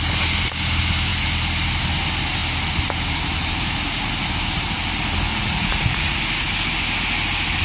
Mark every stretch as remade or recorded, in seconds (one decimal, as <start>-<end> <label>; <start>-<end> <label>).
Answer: 0.0-5.3 recorded; 5.3-6.2 remade; 6.2-7.6 recorded